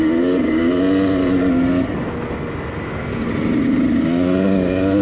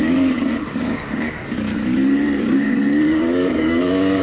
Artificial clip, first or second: second